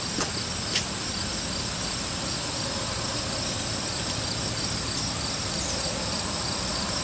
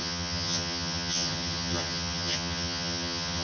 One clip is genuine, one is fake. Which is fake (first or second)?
second